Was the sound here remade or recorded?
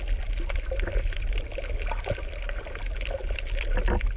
recorded